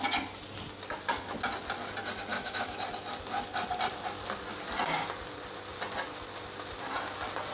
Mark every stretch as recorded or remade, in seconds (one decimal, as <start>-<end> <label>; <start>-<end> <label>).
0.0-2.3 recorded; 2.3-2.8 remade; 2.8-7.5 recorded